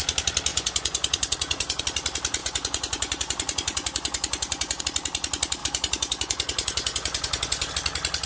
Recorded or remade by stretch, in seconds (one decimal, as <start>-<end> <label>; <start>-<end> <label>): 0.0-0.5 recorded; 0.5-1.8 remade; 1.8-2.4 recorded; 2.4-4.8 remade; 4.8-5.6 recorded; 5.6-7.7 remade; 7.7-8.3 recorded